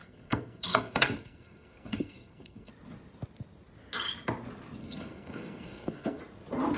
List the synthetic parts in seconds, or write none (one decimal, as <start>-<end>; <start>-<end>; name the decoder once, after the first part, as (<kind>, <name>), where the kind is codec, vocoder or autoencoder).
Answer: 0.0-2.7 (codec, SNAC); 4.8-6.2